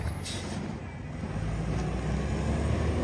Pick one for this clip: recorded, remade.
recorded